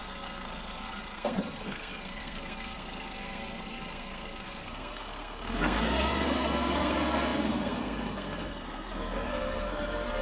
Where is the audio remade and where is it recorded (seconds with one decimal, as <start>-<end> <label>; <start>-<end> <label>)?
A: 0.0-10.2 remade